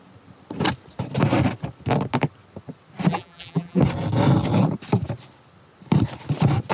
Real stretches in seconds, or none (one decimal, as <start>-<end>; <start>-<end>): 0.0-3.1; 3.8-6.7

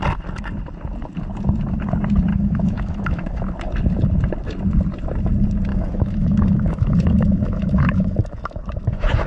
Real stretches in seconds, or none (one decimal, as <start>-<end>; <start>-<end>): 0.0-2.3; 3.4-5.7; 8.6-9.3

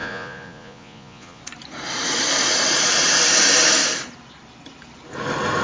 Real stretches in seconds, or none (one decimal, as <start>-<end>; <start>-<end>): 1.4-5.6

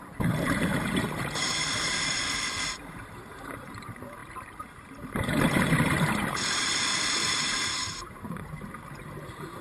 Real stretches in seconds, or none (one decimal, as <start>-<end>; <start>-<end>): 0.0-0.9